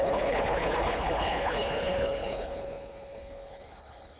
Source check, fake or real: fake